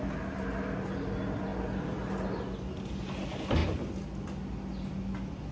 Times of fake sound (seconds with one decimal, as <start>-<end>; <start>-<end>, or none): none

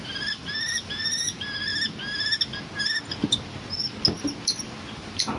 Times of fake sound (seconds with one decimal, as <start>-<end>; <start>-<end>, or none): 0.0-1.7; 4.9-5.4

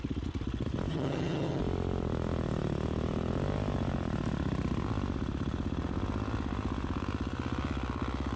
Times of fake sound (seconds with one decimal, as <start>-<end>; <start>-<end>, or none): 0.9-1.6

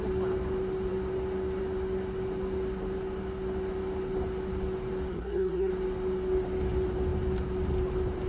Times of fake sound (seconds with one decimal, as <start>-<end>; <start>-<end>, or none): 5.1-5.7

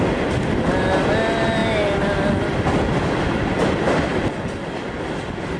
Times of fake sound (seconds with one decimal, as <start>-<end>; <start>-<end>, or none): none